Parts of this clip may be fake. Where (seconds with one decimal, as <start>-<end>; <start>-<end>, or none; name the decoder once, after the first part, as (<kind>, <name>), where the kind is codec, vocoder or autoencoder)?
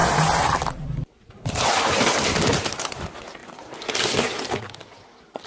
0.0-3.0 (vocoder, BigVGAN v2); 3.4-4.4